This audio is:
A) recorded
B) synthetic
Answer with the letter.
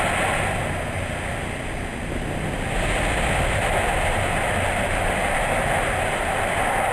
A